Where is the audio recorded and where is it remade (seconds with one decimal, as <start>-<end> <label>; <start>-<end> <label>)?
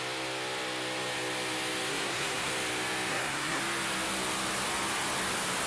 0.0-1.9 recorded; 1.9-2.5 remade; 2.5-3.1 recorded; 3.1-3.6 remade; 3.6-5.7 recorded